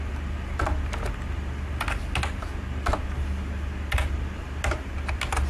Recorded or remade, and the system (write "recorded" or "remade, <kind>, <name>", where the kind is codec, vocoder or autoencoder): recorded